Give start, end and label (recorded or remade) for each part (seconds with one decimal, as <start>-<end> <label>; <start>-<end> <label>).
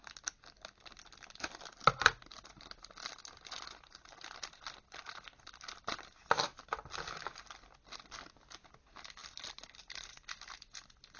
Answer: 0.0-11.2 recorded